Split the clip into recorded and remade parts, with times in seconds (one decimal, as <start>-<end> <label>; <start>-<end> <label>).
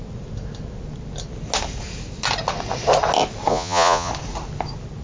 0.0-3.5 recorded; 3.5-4.1 remade; 4.1-5.0 recorded